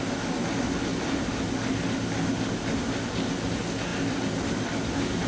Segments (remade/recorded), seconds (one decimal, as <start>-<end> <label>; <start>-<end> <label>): 0.0-5.3 recorded